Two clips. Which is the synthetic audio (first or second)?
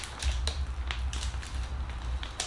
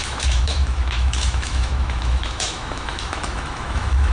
second